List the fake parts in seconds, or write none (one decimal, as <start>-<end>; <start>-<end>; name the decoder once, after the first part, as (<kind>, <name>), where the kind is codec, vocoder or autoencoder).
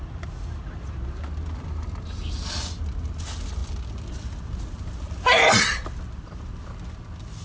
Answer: none